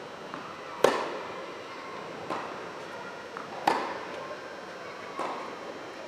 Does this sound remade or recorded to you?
recorded